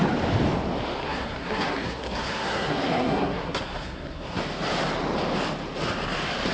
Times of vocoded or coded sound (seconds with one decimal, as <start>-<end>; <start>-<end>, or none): 1.0-4.4